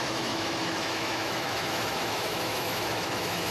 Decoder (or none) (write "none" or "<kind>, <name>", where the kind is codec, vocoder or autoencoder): autoencoder, DAC-VAE